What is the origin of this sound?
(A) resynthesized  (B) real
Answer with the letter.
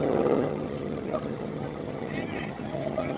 A